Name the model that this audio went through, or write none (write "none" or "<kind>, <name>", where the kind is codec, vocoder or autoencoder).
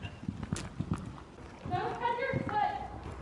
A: none